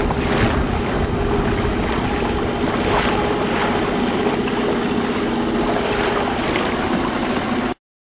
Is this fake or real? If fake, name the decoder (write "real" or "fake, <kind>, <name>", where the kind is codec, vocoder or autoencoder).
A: real